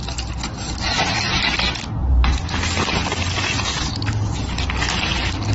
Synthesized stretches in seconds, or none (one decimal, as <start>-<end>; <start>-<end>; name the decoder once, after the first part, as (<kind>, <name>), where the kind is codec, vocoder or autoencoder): 2.0-2.6 (vocoder, BigVGAN v2)